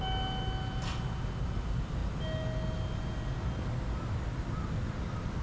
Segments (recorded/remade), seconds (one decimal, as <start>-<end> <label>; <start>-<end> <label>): 0.0-5.4 recorded